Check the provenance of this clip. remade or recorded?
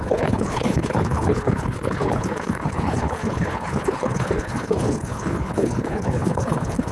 remade